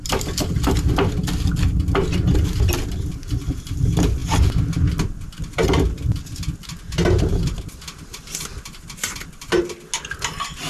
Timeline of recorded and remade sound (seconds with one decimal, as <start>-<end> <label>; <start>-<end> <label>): 0.0-10.7 recorded